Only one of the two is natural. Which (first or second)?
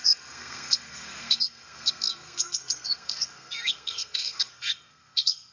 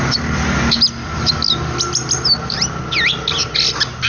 second